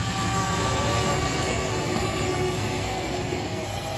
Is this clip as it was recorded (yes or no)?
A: no